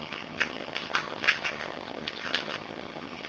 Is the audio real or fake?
fake